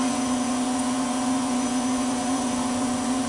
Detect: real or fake fake